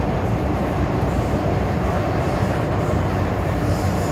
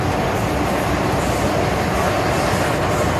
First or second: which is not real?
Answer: first